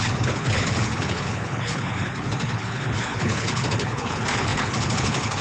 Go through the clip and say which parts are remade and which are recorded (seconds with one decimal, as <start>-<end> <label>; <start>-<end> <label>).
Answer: 0.0-5.4 remade